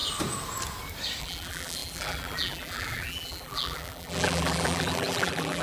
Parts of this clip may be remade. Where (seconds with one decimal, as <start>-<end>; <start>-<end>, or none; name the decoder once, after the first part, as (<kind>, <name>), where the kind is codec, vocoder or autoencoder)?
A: 1.2-5.6 (vocoder, BigVGAN v2)

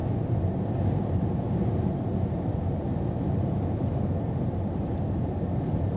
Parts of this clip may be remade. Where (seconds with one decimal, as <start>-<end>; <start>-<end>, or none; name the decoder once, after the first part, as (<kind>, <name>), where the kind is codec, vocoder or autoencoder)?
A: 0.6-2.1 (vocoder, BigVGAN v2); 3.4-3.9

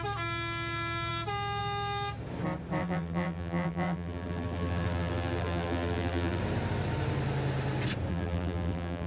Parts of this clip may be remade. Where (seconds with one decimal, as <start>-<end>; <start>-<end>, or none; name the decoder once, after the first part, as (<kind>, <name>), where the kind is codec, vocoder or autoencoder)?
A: 2.8-6.4 (vocoder, BigVGAN v2); 8.1-9.1

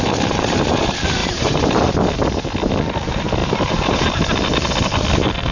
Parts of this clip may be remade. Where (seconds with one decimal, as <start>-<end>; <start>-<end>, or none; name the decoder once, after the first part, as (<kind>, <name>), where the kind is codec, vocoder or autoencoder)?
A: 1.2-1.9 (vocoder, BigVGAN v2); 3.4-4.1

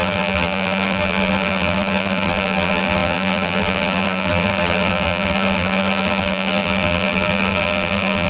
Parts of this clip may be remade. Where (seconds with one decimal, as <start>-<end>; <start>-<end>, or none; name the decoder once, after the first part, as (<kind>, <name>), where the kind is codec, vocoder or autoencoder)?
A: 0.0-8.3 (vocoder, BigVGAN v2)

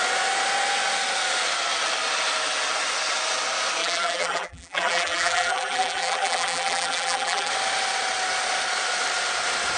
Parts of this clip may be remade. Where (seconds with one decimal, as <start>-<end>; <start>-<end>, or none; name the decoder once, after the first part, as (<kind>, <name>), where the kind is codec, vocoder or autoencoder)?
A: 3.8-7.5 (vocoder, BigVGAN v2)